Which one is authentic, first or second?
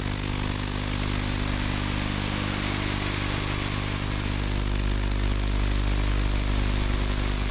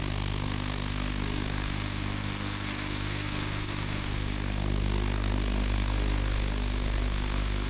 first